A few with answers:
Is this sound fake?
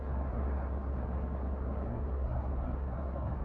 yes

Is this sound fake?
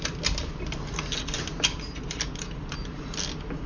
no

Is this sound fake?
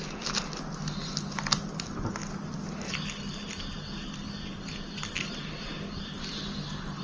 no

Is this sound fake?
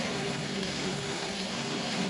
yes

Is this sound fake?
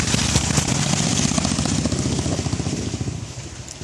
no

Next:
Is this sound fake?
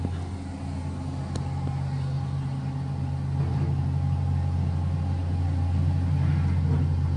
no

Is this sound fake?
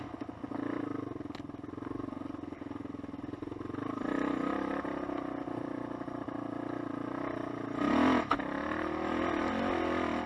no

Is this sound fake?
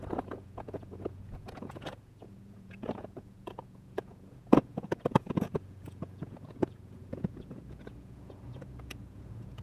yes